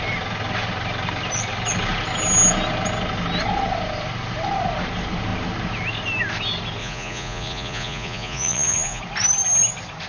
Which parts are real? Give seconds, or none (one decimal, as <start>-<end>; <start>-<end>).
0.0-6.8; 9.0-10.1